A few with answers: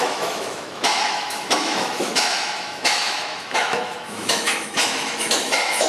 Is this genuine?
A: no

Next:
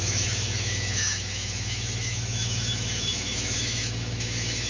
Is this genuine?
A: no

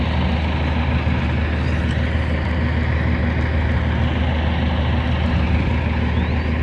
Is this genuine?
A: yes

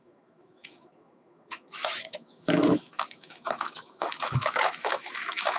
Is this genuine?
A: no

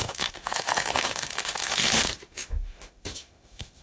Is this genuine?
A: no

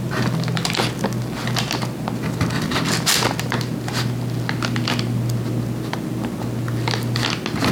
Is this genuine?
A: yes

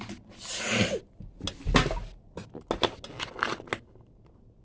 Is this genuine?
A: yes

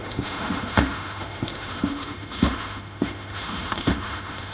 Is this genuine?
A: no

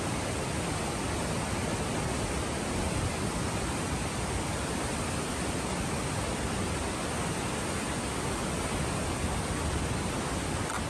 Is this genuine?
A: yes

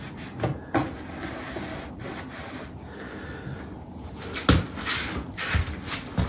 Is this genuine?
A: yes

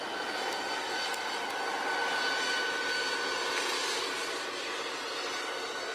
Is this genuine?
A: yes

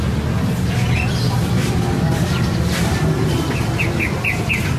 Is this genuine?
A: yes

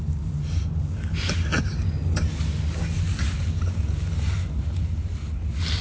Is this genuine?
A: yes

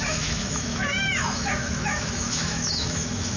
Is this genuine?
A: no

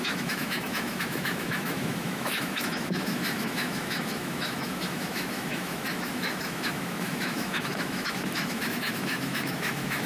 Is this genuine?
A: no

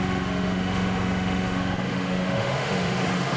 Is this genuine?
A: no